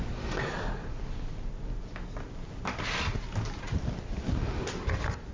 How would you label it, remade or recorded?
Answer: recorded